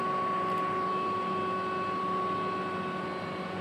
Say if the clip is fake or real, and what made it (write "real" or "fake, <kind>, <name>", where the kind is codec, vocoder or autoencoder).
real